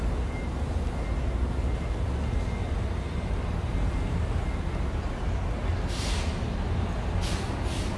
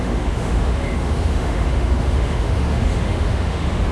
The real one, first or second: first